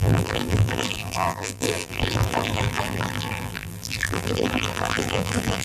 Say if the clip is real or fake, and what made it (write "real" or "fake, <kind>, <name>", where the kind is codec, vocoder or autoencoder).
fake, vocoder, BigVGAN v2